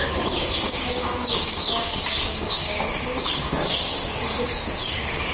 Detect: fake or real fake